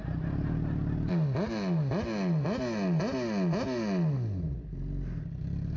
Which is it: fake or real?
real